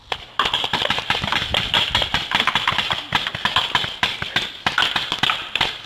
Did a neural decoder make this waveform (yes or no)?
no